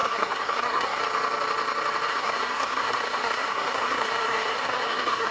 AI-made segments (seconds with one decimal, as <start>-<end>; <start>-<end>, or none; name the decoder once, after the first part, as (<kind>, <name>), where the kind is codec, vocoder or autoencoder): 0.0-1.0 (codec, SNAC); 2.1-5.3